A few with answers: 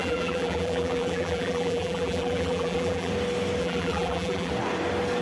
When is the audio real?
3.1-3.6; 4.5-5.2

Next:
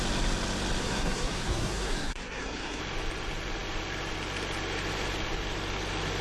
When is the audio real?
0.0-0.8; 2.8-6.2

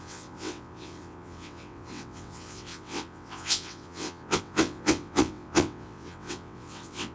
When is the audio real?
none

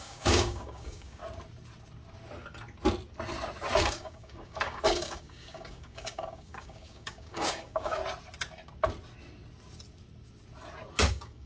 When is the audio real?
1.2-3.8; 8.0-11.1